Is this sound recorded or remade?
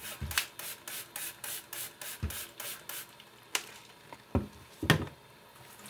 recorded